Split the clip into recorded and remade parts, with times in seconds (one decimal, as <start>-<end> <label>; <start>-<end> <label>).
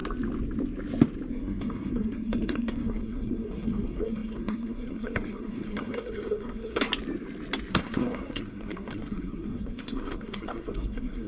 0.0-1.3 recorded; 1.3-6.9 remade; 6.9-7.7 recorded; 7.7-11.3 remade